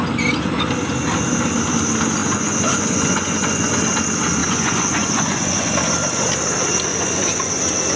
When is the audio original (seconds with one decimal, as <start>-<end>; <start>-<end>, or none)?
0.0-2.2; 3.8-4.4; 5.7-6.9; 7.6-8.0